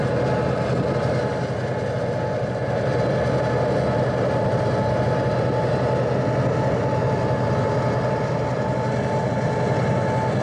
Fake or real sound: real